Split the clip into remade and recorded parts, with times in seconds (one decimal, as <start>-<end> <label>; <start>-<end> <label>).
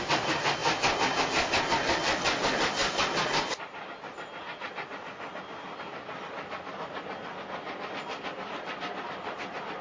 0.0-9.8 recorded